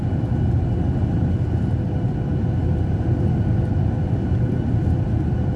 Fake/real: real